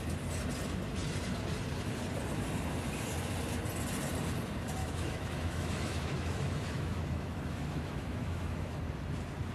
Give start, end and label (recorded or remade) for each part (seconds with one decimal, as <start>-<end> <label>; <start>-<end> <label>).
0.0-4.8 recorded; 4.8-8.8 remade; 8.8-9.5 recorded